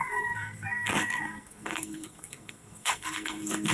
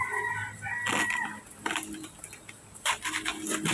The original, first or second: second